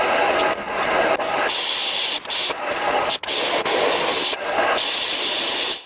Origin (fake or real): real